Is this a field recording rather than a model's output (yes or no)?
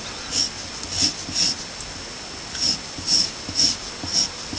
yes